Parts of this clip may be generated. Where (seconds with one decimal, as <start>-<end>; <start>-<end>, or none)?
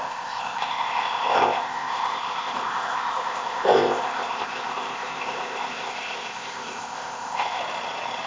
0.0-7.6